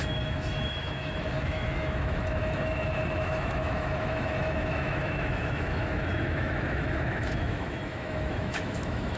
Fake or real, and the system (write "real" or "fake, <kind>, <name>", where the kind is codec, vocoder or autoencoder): fake, autoencoder, DAC-VAE